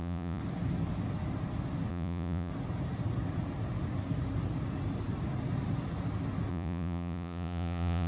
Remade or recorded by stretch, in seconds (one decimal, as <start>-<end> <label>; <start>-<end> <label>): 0.0-0.4 remade; 0.4-1.9 recorded; 1.9-2.5 remade; 2.5-6.5 recorded; 6.5-8.1 remade